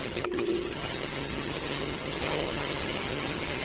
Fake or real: fake